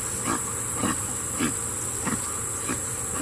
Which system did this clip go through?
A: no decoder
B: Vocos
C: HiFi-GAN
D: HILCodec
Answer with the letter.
A